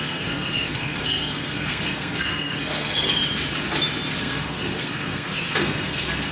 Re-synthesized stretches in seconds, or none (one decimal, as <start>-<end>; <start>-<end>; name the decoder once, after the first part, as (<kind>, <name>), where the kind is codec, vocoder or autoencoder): 0.0-3.2 (codec, SNAC); 4.2-6.3